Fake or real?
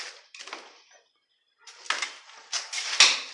real